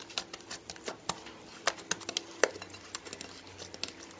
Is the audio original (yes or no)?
yes